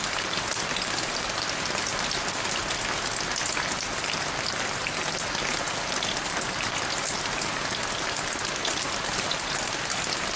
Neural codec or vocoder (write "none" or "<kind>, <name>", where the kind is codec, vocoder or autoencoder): none